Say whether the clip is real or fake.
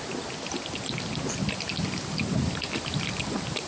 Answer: real